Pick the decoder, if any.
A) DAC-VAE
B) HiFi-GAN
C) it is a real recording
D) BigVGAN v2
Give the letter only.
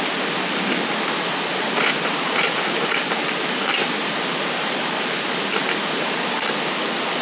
C